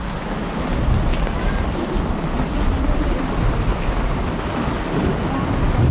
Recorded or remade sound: recorded